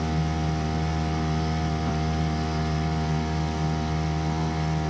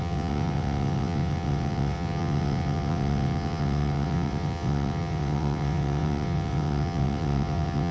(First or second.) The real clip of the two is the first